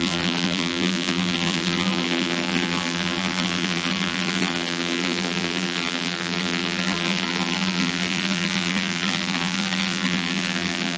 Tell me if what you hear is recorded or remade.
remade